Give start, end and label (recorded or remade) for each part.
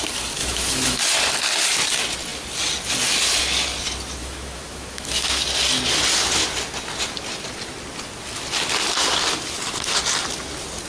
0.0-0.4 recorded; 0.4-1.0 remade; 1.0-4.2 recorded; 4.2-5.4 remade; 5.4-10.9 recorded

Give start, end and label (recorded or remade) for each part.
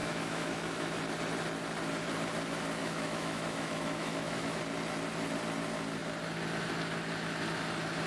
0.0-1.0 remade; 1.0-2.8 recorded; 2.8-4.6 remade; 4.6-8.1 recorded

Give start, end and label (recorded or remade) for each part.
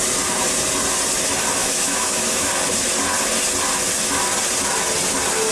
0.0-1.6 recorded; 1.6-2.5 remade; 2.5-5.5 recorded